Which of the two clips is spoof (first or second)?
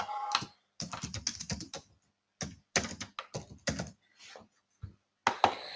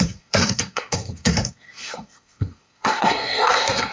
second